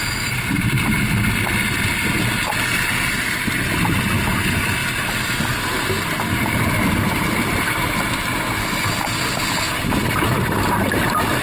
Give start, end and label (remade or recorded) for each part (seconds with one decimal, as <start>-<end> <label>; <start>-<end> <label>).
0.0-11.4 recorded